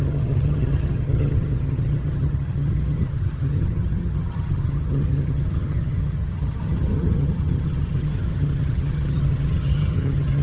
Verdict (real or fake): fake